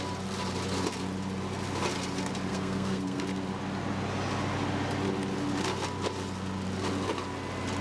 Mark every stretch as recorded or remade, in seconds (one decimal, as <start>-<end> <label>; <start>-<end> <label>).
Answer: 0.0-2.5 recorded; 2.5-3.2 remade; 3.2-7.8 recorded